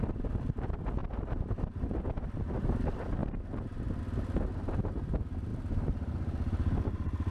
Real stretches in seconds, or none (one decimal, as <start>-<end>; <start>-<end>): 0.0-7.3